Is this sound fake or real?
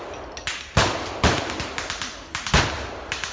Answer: real